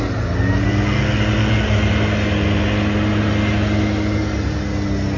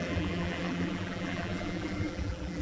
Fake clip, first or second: second